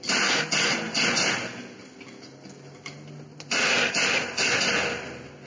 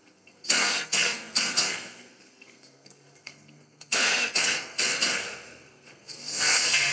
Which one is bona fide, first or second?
first